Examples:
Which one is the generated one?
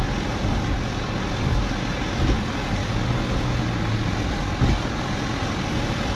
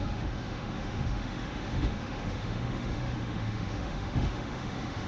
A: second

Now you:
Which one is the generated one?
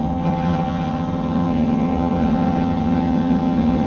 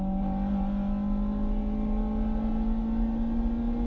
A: first